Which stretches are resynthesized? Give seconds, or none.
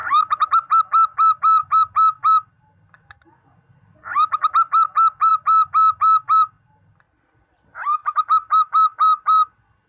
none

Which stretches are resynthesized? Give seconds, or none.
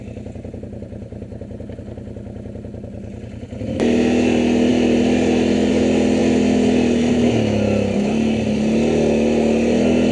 none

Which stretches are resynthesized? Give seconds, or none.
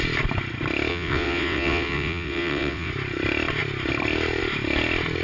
0.9-2.9 (vocoder, WaveNeXt)